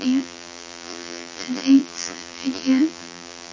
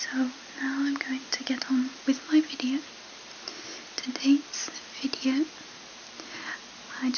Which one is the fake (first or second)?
first